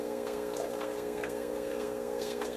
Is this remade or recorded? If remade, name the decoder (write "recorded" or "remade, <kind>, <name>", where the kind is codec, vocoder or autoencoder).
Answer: remade, codec, SNAC